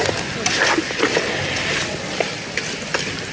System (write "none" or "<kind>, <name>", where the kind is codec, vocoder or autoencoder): none